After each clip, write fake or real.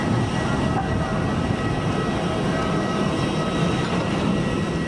real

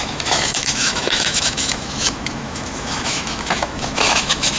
fake